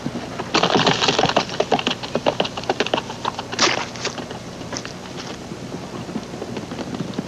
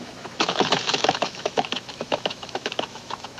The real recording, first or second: first